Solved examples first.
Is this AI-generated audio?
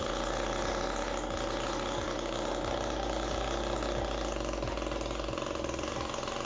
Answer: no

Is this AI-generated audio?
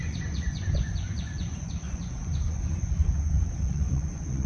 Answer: yes